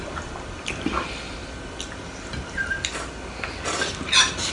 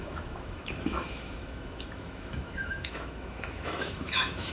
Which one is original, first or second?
first